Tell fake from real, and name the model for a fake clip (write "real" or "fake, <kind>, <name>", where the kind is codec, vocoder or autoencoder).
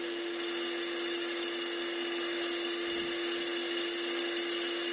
real